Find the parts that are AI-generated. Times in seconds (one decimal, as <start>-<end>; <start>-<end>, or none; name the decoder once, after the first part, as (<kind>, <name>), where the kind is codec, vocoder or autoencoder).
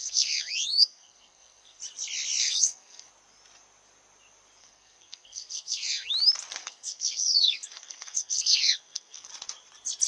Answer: 0.0-1.8 (codec, SNAC); 2.4-3.1; 4.6-6.1; 6.6-9.3